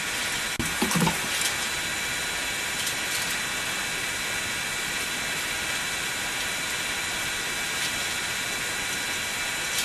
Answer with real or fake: real